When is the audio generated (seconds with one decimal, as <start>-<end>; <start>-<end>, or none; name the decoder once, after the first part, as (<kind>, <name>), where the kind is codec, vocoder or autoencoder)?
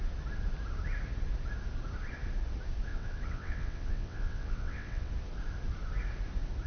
2.9-5.1 (vocoder, WaveNeXt)